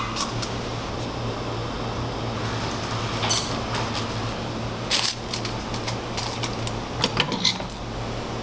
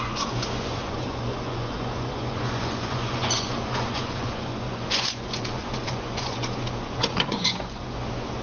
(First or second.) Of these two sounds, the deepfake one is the second